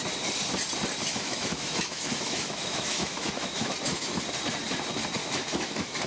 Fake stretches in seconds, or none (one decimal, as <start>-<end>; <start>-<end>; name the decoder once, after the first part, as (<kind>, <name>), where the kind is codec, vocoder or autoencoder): 1.1-4.2 (autoencoder, DAC-VAE); 5.2-6.1